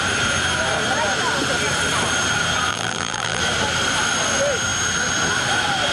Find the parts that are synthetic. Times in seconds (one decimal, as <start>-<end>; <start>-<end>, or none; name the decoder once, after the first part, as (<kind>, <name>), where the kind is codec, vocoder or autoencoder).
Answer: 2.7-3.4 (vocoder, BigVGAN v2)